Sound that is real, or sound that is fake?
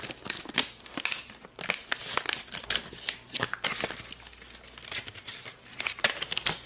real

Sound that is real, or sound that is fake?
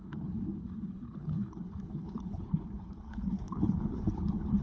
fake